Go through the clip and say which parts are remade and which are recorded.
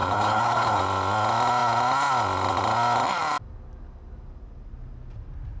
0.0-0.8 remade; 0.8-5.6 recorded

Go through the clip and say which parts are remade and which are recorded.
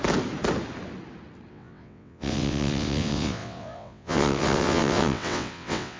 0.0-1.5 recorded; 1.5-6.0 remade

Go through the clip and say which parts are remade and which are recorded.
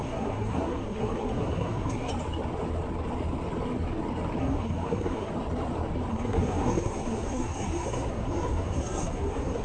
0.0-2.1 remade; 2.1-4.4 recorded; 4.4-5.3 remade; 5.3-6.1 recorded; 6.1-9.6 remade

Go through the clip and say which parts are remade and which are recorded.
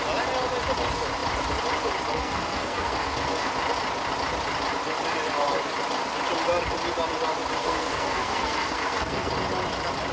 0.0-2.1 recorded; 2.1-3.5 remade; 3.5-7.6 recorded; 7.6-9.3 remade; 9.3-10.1 recorded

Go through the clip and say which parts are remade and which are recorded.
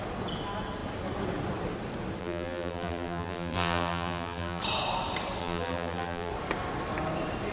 0.0-2.2 recorded; 2.2-4.6 remade; 4.6-5.4 recorded; 5.4-6.3 remade; 6.3-7.5 recorded